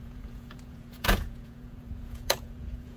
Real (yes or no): no